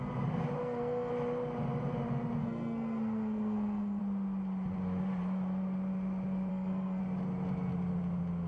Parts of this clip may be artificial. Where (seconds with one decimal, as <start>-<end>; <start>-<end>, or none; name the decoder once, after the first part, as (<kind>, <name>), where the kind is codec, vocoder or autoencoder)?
0.6-1.1 (codec, SNAC); 2.4-4.0; 6.5-7.0